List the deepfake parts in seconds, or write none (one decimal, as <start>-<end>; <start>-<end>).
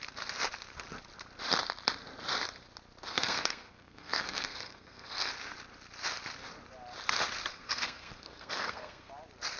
3.1-5.3; 7.5-9.1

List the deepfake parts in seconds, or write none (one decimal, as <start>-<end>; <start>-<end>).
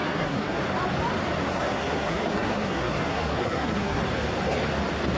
0.0-0.6; 1.5-4.0